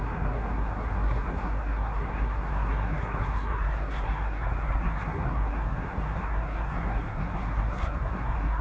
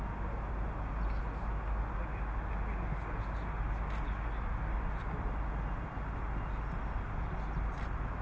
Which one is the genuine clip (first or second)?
second